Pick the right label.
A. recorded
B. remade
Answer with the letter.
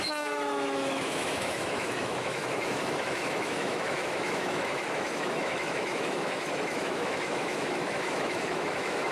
B